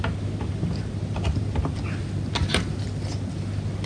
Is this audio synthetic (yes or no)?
no